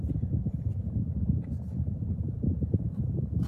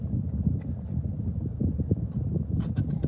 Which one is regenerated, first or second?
first